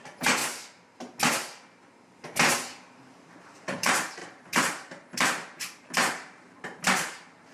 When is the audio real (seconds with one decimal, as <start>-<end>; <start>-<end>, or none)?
0.4-3.3

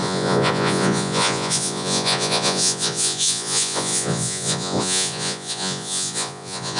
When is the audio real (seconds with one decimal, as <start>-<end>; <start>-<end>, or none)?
none

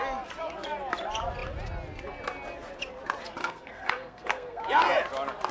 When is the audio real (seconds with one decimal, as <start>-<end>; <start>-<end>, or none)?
0.0-3.4; 4.6-5.5